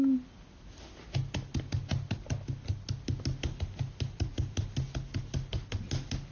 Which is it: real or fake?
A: real